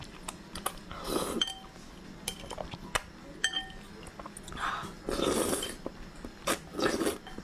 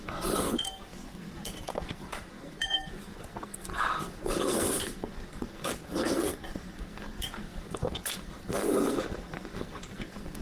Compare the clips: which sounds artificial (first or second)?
second